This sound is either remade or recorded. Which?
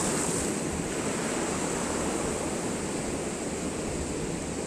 recorded